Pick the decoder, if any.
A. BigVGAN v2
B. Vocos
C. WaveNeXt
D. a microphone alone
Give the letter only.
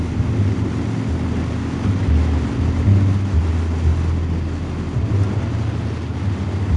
D